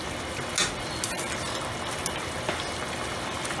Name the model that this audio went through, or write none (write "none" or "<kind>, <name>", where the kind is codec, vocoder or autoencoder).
none